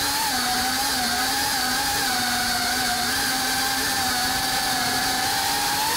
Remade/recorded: remade